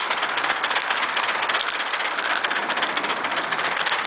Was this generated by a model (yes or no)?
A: no